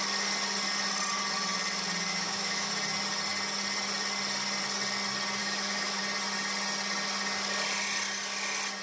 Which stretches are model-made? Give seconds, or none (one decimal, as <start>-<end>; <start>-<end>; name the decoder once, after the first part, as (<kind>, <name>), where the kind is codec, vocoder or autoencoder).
2.1-2.7 (autoencoder, DAC-VAE); 5.4-6.0